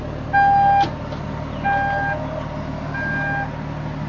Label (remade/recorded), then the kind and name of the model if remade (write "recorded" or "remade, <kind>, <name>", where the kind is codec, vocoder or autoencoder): recorded